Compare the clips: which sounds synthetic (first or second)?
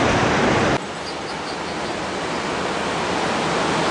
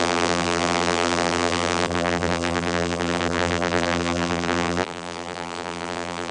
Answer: second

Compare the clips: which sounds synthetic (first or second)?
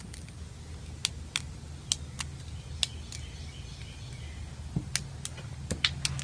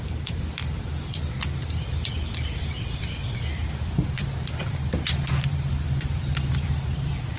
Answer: second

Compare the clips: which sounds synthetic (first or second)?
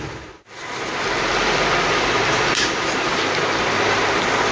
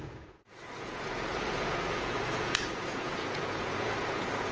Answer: second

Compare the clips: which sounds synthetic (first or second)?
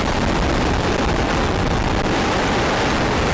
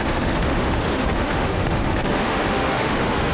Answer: second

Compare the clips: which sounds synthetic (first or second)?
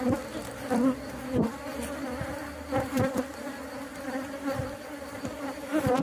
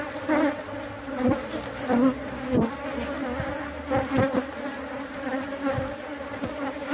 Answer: first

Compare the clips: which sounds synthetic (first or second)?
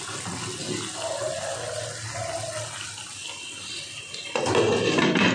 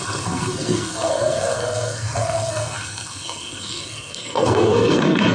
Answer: second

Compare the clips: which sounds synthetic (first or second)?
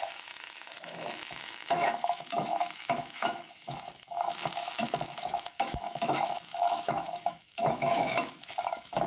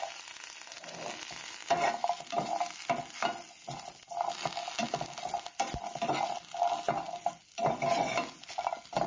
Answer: first